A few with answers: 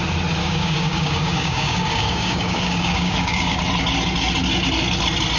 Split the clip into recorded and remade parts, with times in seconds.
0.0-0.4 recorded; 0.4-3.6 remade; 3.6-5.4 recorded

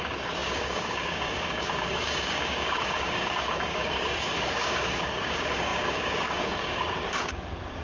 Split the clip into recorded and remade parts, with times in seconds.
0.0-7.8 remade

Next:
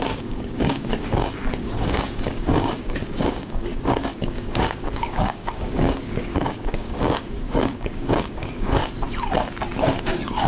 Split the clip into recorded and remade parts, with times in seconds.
0.0-8.8 remade; 8.8-10.0 recorded; 10.0-10.5 remade

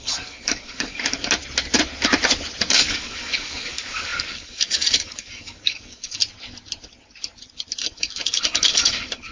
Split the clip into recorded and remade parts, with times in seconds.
0.0-1.1 remade; 1.1-2.7 recorded; 2.7-6.2 remade; 6.2-7.8 recorded; 7.8-9.3 remade

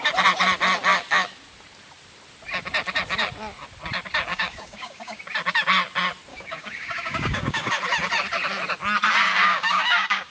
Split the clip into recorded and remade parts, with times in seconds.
0.0-4.3 recorded; 4.3-5.2 remade; 5.2-6.3 recorded; 6.3-7.7 remade; 7.7-9.4 recorded; 9.4-10.3 remade